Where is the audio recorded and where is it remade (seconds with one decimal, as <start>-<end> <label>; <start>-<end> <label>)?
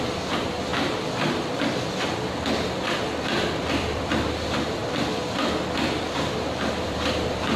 0.0-0.7 remade; 0.7-3.7 recorded; 3.7-7.6 remade